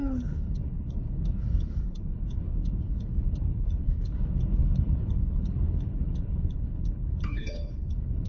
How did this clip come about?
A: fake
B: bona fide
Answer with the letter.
A